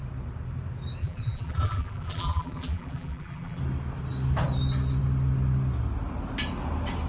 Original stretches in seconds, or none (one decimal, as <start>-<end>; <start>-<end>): 0.0-1.0; 3.6-7.1